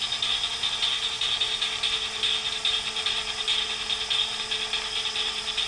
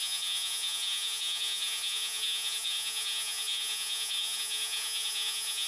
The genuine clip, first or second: first